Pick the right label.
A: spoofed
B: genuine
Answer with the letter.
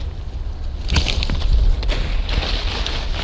B